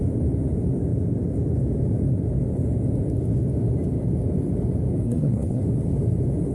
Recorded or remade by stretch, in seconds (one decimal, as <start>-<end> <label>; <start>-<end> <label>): 0.0-5.0 recorded; 5.0-5.6 remade; 5.6-6.5 recorded